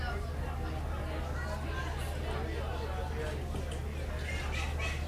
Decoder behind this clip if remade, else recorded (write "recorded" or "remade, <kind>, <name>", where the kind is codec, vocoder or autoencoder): recorded